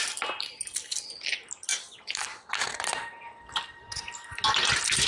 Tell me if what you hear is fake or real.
real